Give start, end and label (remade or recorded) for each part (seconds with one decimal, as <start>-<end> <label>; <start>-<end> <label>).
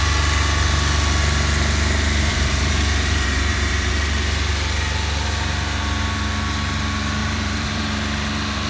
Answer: 0.0-2.3 recorded; 2.3-3.9 remade; 3.9-7.2 recorded; 7.2-7.8 remade; 7.8-8.7 recorded